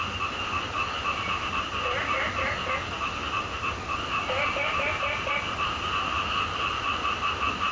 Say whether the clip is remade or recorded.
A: recorded